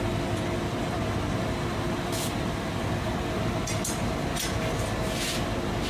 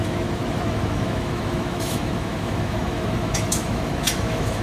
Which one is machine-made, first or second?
second